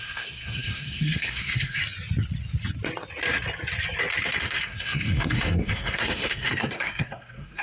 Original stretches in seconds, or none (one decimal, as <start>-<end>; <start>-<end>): 1.8-4.4